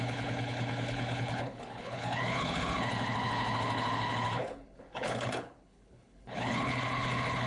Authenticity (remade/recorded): remade